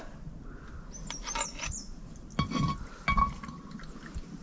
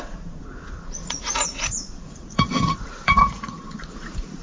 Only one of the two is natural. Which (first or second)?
first